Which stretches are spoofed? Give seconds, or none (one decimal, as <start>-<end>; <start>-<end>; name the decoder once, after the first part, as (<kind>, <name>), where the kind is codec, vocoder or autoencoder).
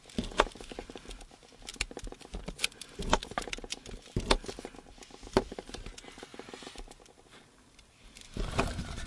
6.3-9.1 (vocoder, BigVGAN v2)